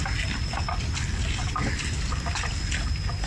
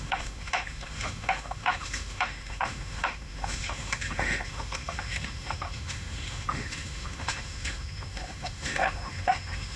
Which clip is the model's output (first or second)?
second